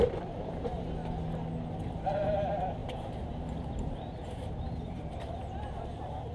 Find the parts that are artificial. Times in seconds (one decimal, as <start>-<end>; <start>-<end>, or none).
0.0-1.0; 1.8-6.3